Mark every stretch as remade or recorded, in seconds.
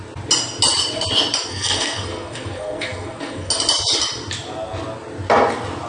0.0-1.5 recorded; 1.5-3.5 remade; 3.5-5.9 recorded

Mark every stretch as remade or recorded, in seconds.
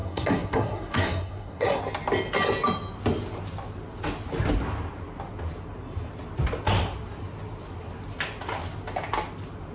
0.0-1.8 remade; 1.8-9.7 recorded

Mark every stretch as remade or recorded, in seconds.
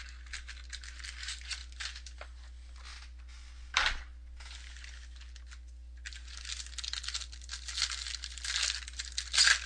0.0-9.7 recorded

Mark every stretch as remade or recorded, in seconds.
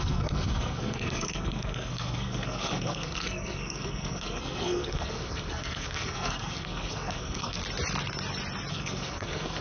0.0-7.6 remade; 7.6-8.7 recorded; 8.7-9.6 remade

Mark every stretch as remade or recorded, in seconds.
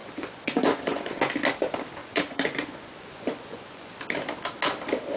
0.0-1.1 remade; 1.1-2.0 recorded; 2.0-3.9 remade; 3.9-5.2 recorded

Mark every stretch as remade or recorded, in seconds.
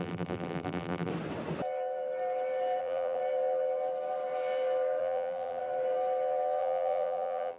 0.0-1.1 remade; 1.1-2.8 recorded; 2.8-3.2 remade; 3.2-5.0 recorded; 5.0-5.6 remade; 5.6-6.6 recorded; 6.6-7.6 remade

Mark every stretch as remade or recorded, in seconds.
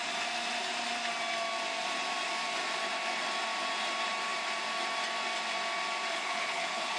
0.0-6.1 recorded; 6.1-7.0 remade